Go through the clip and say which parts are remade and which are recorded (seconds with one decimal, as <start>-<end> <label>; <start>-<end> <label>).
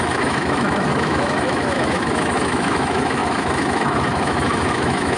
0.0-5.2 remade